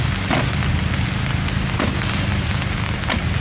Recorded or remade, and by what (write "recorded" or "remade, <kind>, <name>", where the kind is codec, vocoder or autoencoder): recorded